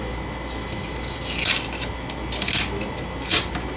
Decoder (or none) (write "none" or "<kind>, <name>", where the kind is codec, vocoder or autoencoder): none